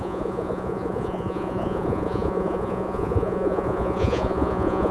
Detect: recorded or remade remade